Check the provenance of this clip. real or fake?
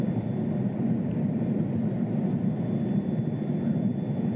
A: fake